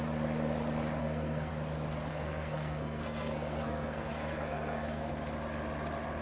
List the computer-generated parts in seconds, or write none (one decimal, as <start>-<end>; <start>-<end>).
1.0-1.5; 2.1-5.1